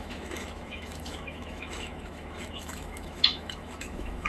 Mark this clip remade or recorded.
remade